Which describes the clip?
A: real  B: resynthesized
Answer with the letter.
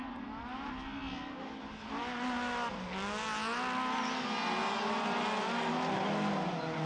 A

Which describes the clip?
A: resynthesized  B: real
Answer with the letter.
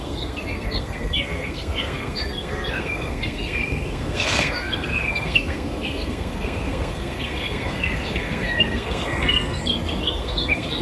A